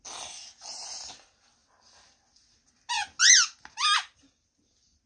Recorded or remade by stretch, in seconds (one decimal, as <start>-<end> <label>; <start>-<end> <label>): 0.0-5.1 recorded